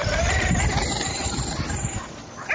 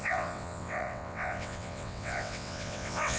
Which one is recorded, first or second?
first